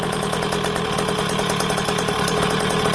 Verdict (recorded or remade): recorded